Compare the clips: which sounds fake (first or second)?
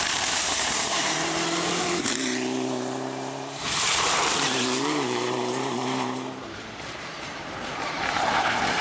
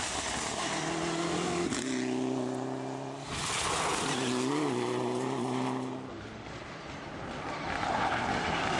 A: first